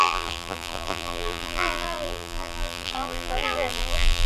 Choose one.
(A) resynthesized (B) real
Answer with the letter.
A